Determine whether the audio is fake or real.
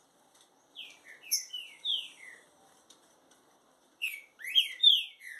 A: fake